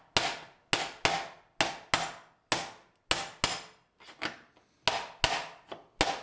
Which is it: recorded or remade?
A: recorded